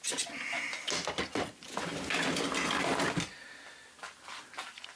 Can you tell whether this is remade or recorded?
recorded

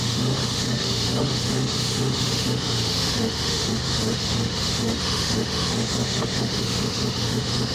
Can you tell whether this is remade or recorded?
remade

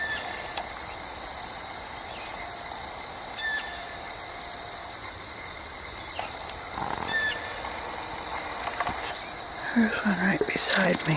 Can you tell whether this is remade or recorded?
recorded